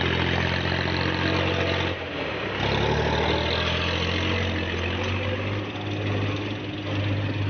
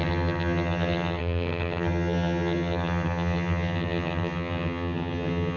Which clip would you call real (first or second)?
first